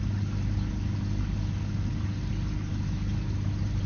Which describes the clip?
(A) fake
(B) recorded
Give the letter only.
B